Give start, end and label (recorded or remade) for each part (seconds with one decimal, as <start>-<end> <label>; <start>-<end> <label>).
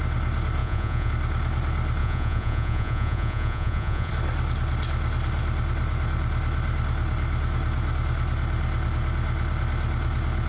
0.0-0.6 recorded; 0.6-1.1 remade; 1.1-2.0 recorded; 2.0-4.1 remade; 4.1-10.5 recorded